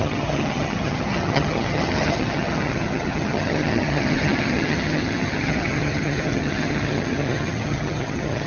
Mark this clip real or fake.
fake